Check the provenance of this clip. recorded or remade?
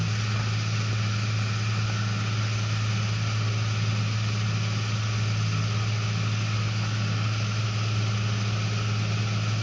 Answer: recorded